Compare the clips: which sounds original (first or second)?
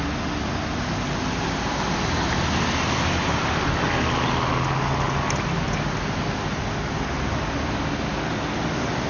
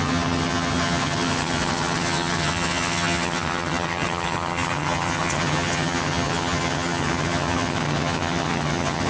first